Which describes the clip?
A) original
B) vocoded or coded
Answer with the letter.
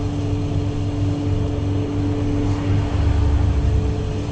A